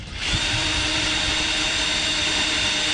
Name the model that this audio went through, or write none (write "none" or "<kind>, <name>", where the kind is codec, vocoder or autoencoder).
vocoder, BigVGAN v2